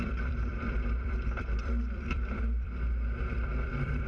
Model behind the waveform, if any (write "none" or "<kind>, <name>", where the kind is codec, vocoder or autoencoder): vocoder, BigVGAN v2